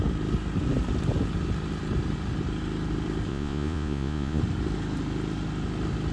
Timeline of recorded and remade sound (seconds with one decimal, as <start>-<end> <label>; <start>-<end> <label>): 0.0-3.3 recorded; 3.3-4.4 remade; 4.4-6.1 recorded